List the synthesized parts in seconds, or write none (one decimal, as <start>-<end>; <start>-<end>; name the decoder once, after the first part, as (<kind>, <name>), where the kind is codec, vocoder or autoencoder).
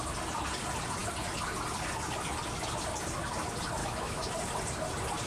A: 3.8-4.3 (autoencoder, DAC-VAE)